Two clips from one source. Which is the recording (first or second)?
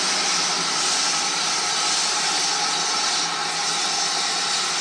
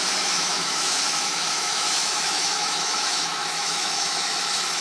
first